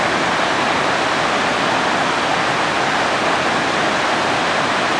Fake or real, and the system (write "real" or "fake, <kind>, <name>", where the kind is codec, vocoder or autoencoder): real